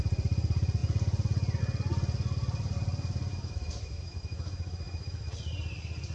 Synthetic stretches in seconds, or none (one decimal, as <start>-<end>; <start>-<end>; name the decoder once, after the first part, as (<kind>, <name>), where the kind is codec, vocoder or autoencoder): 3.3-5.3 (autoencoder, DAC-VAE)